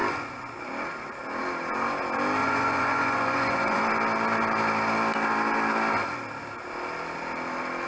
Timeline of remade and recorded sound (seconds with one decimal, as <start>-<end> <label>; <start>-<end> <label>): 0.0-2.4 recorded; 2.4-3.8 remade; 3.8-7.9 recorded